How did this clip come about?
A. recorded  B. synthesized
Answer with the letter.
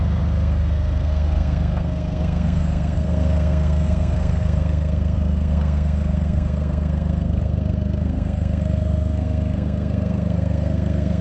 B